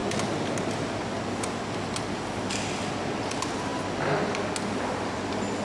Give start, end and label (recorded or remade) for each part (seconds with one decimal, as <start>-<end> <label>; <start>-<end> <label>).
0.0-5.6 recorded